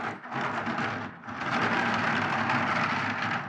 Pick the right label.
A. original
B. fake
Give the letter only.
A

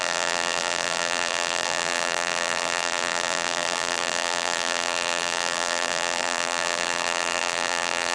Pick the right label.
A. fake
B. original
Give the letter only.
A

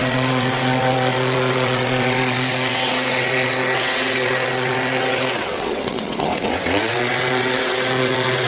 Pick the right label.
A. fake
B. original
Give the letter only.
A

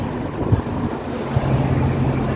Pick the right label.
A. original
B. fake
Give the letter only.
A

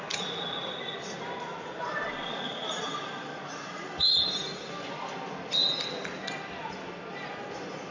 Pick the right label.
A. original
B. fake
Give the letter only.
A